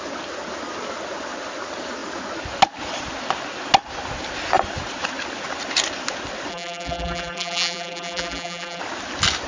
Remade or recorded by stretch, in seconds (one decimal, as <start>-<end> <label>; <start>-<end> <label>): 0.0-6.5 recorded; 6.5-8.8 remade; 8.8-9.5 recorded